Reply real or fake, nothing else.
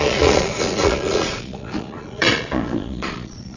fake